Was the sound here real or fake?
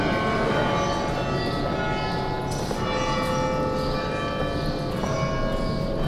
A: real